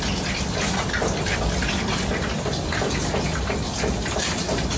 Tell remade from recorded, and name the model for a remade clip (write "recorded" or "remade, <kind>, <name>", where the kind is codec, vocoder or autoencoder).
recorded